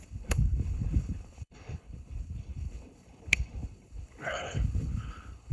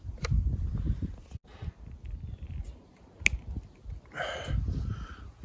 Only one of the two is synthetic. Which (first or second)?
first